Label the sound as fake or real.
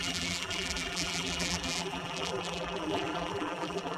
fake